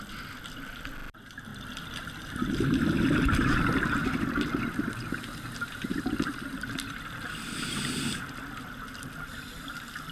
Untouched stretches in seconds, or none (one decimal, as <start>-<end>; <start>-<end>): 0.0-10.1